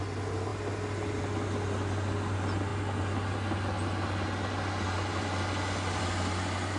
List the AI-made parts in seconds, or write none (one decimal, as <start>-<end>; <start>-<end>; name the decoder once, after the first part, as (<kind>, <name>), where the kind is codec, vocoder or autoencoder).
none

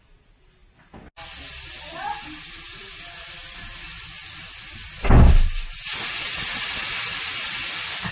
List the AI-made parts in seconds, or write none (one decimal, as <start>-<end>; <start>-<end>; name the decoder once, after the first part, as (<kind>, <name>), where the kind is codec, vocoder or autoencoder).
none

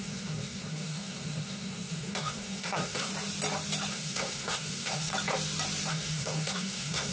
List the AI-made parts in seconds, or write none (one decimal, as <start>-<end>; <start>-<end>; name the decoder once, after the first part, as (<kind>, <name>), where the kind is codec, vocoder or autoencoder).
0.0-3.1 (codec, SNAC); 3.9-5.1; 5.9-7.1

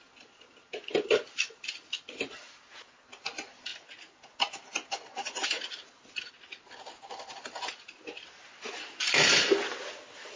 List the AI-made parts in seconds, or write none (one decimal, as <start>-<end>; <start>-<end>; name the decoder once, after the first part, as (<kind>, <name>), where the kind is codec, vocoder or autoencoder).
none

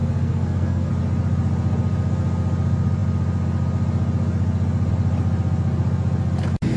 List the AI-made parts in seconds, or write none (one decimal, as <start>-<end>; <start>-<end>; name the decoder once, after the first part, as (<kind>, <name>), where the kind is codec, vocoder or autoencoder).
0.0-0.9 (codec, SNAC)

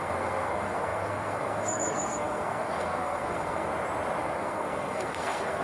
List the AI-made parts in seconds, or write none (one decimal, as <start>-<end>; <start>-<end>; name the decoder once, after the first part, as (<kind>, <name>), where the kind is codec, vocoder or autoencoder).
0.0-3.7 (codec, SNAC); 4.2-5.6

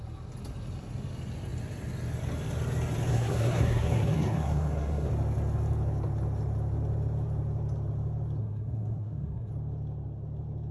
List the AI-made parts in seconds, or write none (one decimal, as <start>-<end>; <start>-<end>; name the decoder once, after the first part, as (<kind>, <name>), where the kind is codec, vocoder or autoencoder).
3.1-5.1 (codec, SNAC); 8.4-9.5

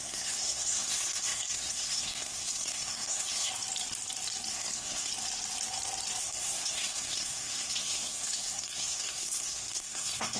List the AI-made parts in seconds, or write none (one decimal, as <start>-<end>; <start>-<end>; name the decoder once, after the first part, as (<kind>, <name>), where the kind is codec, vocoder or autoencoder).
0.0-3.5 (codec, SNAC); 4.5-5.1; 6.2-10.4